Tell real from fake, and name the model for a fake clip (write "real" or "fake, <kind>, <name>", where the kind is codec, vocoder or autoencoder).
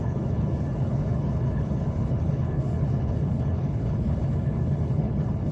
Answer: fake, codec, HILCodec